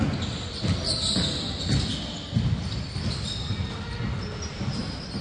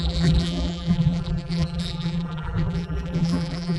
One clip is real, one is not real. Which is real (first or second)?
first